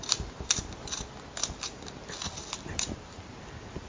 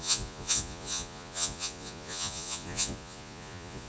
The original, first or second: first